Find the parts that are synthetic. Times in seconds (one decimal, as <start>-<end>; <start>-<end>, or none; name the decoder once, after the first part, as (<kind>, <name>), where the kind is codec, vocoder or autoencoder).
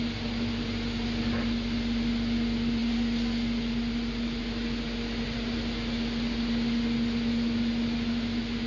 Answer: none